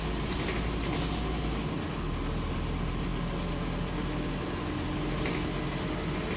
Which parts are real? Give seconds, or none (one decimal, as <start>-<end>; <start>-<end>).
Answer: 0.0-6.4